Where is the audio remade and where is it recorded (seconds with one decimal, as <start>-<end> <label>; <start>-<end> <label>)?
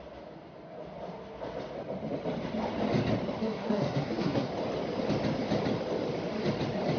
0.0-3.4 recorded; 3.4-4.5 remade; 4.5-7.0 recorded